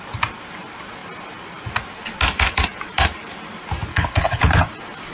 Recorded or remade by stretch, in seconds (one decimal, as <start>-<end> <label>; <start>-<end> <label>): 0.0-3.9 recorded; 3.9-4.4 remade; 4.4-5.1 recorded